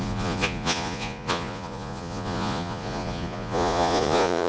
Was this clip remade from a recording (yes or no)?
yes